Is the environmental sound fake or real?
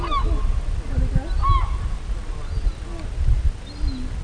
real